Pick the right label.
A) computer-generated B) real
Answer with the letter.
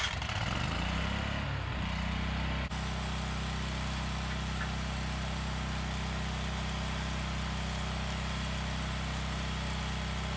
B